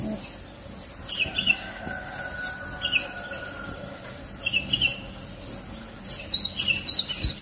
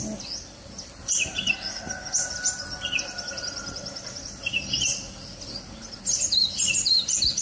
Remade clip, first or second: second